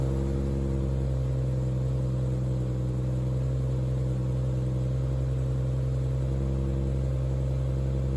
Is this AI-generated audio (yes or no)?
no